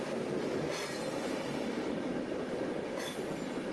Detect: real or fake real